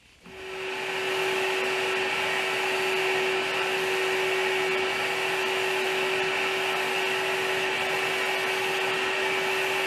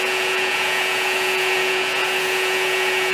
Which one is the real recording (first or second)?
first